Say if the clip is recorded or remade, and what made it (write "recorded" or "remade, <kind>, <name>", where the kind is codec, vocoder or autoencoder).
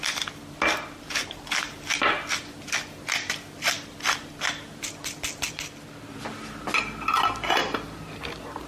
recorded